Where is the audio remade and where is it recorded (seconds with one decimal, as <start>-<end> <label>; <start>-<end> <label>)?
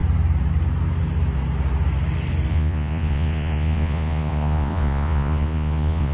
0.0-2.5 recorded; 2.5-6.1 remade